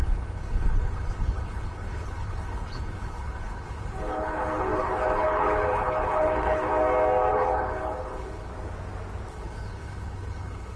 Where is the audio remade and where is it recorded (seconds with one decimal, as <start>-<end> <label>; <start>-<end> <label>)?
0.0-6.7 remade; 6.7-7.3 recorded; 7.3-8.5 remade; 8.5-9.3 recorded; 9.3-10.8 remade

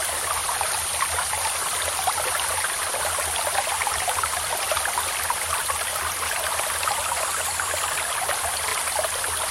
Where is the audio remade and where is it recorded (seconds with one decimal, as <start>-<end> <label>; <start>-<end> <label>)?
0.0-9.5 recorded

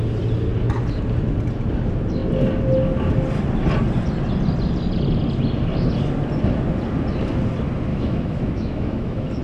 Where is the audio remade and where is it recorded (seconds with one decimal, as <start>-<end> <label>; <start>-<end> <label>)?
0.0-7.9 recorded; 7.9-9.4 remade

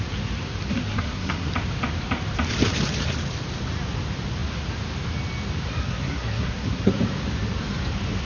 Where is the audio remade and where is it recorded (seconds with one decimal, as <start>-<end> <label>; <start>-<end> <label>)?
0.0-0.9 recorded; 0.9-1.5 remade; 1.5-5.8 recorded; 5.8-6.9 remade; 6.9-8.2 recorded

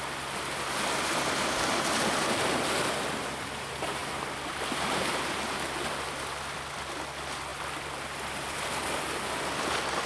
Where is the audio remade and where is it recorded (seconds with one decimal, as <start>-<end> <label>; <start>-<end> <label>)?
0.0-10.1 recorded

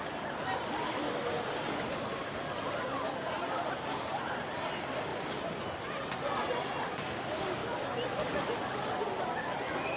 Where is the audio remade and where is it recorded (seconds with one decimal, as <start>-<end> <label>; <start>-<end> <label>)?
0.0-10.0 recorded

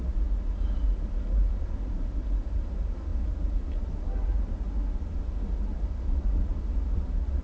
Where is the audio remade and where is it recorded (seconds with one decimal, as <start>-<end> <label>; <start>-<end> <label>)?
0.0-7.4 recorded